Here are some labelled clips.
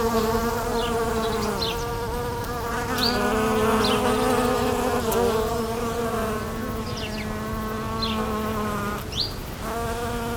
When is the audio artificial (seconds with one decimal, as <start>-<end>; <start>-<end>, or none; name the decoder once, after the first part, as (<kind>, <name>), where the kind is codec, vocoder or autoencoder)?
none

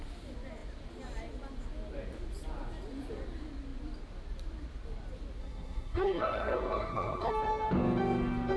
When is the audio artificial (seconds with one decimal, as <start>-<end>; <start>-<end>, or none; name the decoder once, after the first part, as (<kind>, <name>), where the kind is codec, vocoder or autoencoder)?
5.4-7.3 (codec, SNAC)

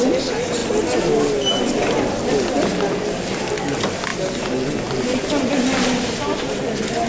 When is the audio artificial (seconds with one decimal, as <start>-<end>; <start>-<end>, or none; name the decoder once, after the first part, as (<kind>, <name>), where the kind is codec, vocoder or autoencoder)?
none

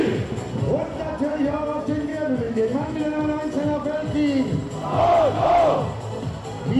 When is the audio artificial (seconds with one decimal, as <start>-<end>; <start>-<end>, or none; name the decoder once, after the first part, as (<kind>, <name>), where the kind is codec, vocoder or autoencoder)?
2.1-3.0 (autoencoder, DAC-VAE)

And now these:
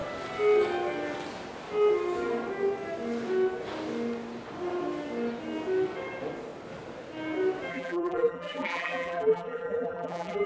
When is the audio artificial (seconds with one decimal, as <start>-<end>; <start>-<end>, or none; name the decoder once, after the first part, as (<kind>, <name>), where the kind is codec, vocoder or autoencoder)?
7.7-10.5 (vocoder, BigVGAN v2)

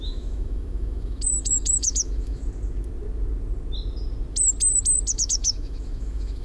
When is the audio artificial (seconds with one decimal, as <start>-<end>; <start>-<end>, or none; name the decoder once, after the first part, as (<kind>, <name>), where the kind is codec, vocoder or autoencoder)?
0.0-2.4 (autoencoder, DAC-VAE); 5.1-6.4

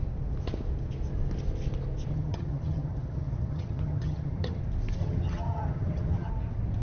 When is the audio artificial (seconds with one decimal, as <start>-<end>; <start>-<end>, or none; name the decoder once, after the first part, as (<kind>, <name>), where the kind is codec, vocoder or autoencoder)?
2.1-4.6 (vocoder, HiFi-GAN); 5.0-6.3

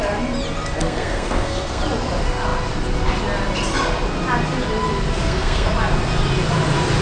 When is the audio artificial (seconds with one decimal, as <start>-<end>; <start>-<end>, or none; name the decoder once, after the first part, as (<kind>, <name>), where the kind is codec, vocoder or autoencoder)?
0.8-1.8 (codec, SNAC); 5.1-5.7